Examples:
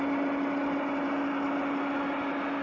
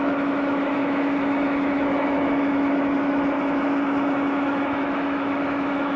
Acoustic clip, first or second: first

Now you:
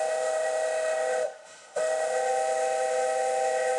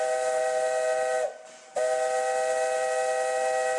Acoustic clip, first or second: second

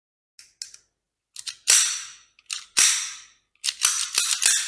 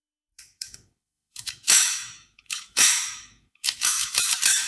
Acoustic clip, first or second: first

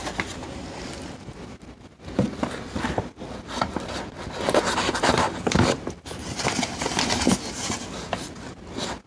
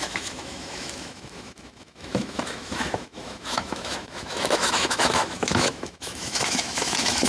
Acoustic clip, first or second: first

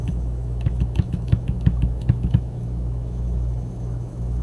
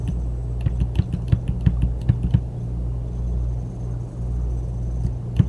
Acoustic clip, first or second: second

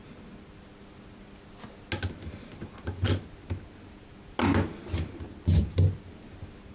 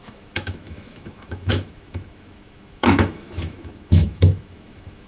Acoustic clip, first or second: first